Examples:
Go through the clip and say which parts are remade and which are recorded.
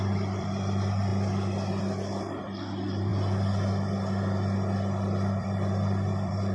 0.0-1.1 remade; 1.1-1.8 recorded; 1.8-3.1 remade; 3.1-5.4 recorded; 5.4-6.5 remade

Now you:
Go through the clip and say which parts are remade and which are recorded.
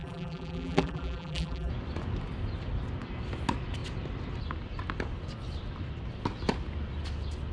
0.0-1.7 remade; 1.7-7.5 recorded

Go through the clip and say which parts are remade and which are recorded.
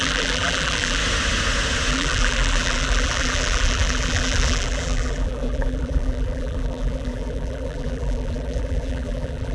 0.0-1.0 remade; 1.0-1.9 recorded; 1.9-9.5 remade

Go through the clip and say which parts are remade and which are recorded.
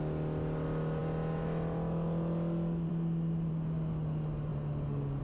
0.0-5.2 recorded